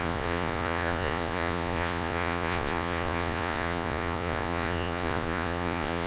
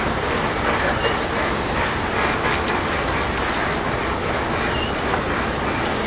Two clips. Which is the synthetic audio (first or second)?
first